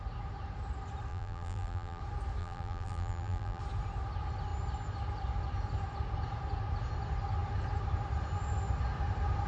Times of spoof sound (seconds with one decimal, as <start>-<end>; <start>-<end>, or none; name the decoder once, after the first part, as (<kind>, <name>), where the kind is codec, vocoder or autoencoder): 1.1-2.0 (vocoder, BigVGAN v2); 2.4-3.6